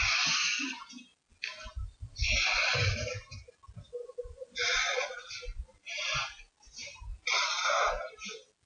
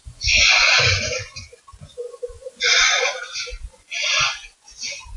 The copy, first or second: second